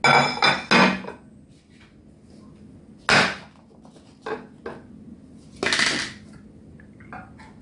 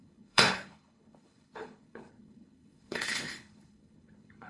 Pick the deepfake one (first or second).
second